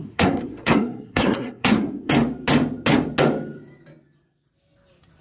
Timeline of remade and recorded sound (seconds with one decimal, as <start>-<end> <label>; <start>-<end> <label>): 0.0-2.1 remade; 2.1-5.2 recorded

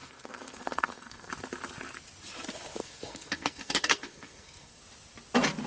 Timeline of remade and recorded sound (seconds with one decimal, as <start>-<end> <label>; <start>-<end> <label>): 0.0-1.3 remade; 1.3-2.8 recorded; 2.8-4.8 remade; 4.8-5.7 recorded